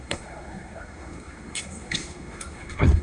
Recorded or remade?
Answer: remade